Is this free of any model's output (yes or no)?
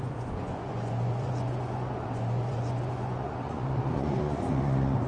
no